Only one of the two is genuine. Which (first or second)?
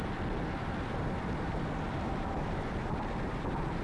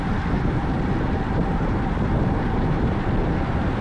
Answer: first